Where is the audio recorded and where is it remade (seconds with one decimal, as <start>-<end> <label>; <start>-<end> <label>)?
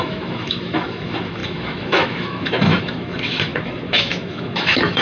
0.0-5.0 remade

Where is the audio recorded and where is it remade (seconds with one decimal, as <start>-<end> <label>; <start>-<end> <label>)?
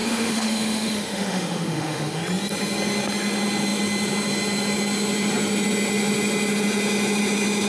0.0-2.2 remade; 2.2-7.7 recorded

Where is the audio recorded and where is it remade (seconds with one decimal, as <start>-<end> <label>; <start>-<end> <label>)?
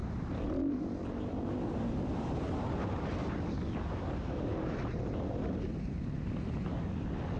0.0-7.4 recorded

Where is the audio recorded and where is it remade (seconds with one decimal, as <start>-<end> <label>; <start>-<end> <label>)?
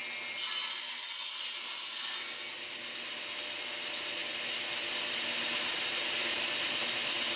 0.0-7.4 recorded